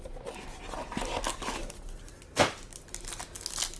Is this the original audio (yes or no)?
yes